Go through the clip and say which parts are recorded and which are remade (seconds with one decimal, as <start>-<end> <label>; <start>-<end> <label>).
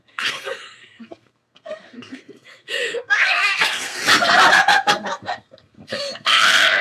0.0-4.0 remade; 4.0-4.5 recorded; 4.5-6.8 remade